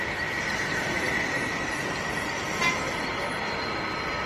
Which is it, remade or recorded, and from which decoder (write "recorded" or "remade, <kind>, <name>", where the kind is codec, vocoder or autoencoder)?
recorded